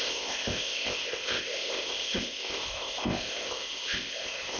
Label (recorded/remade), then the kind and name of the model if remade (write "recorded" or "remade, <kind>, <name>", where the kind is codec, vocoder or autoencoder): remade, codec, ZipCodec